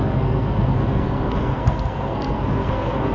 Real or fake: fake